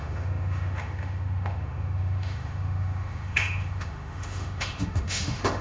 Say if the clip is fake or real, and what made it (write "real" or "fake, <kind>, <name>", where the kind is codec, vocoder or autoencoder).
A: fake, autoencoder, DAC-VAE